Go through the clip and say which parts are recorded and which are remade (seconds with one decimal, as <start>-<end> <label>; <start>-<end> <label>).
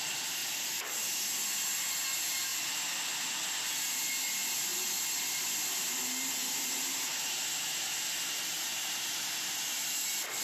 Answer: 0.0-0.4 recorded; 0.4-1.1 remade; 1.1-10.4 recorded